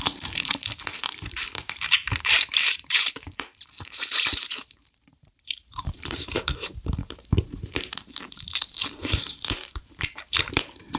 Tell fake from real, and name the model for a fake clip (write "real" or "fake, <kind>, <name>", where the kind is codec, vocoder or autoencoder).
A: fake, vocoder, BigVGAN v2